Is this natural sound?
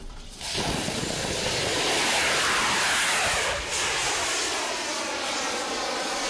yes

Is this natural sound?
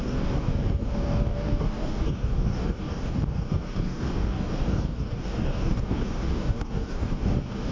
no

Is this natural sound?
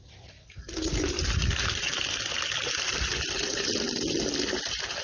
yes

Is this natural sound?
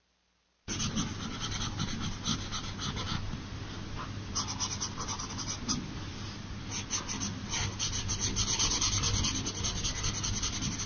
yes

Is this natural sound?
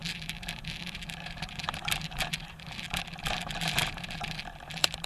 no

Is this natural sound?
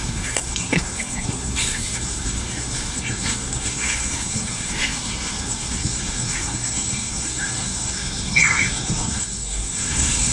no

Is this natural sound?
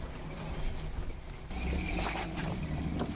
yes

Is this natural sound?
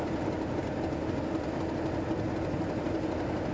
yes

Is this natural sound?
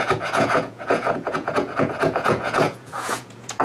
no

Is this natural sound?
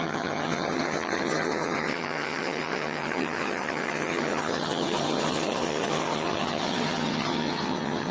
no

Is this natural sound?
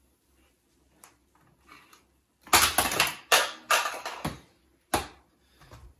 yes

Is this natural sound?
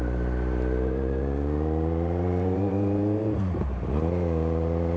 no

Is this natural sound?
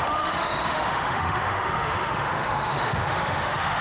no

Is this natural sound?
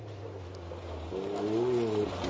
yes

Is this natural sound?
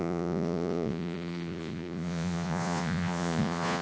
no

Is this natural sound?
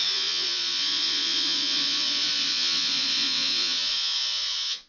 no